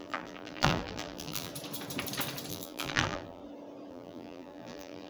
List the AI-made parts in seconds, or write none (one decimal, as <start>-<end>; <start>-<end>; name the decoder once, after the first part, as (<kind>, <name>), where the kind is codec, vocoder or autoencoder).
0.0-1.5 (vocoder, BigVGAN v2); 2.5-3.4; 3.9-5.1